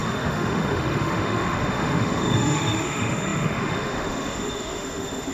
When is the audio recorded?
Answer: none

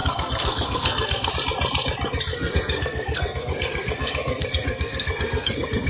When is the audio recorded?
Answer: 1.3-2.3

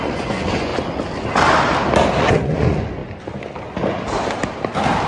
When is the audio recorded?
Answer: 0.7-2.2; 3.0-5.1

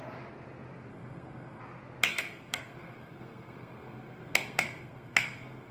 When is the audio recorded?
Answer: 0.0-0.9; 1.6-2.1